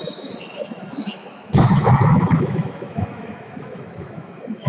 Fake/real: fake